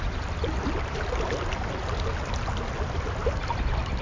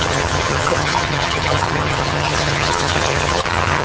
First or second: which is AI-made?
second